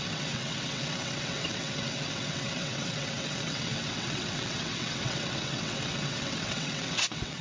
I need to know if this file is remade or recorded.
remade